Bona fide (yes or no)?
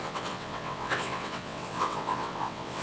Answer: no